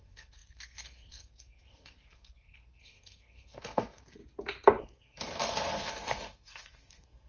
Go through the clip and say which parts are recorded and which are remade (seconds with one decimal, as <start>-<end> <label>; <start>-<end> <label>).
0.0-4.2 remade; 4.2-4.8 recorded; 4.8-7.3 remade